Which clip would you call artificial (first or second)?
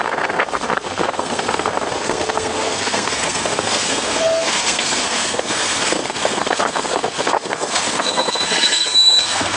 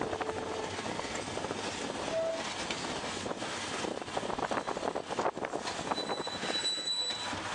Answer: first